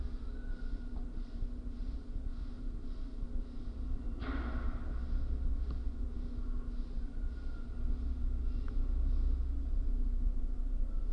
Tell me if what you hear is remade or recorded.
recorded